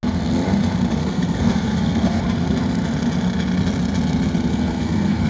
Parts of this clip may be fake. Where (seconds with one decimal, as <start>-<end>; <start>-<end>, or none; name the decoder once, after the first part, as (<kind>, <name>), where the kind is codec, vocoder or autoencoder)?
1.0-2.2 (codec, SNAC); 4.5-5.3